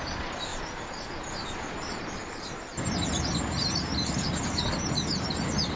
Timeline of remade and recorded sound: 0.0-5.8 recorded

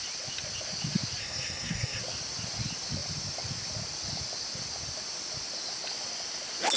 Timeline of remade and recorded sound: 0.0-1.2 recorded; 1.2-2.0 remade; 2.0-6.8 recorded